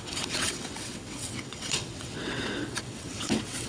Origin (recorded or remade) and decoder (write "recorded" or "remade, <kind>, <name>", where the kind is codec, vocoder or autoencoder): remade, vocoder, WaveNeXt